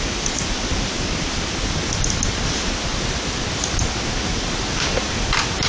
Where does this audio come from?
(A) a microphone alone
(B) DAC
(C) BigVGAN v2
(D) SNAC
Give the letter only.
A